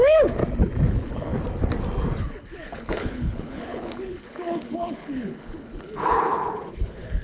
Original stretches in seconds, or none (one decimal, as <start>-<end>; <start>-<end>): 0.4-0.9; 1.3-2.2